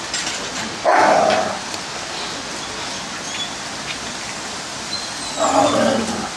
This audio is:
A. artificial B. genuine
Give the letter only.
B